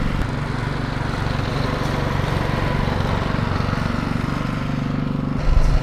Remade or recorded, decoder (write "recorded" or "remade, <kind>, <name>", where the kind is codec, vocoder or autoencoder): recorded